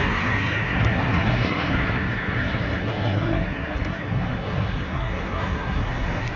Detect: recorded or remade remade